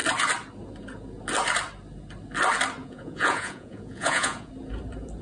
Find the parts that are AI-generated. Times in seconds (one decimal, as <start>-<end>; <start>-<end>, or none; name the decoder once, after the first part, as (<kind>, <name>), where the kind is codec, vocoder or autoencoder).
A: 2.8-4.5 (vocoder, Vocos)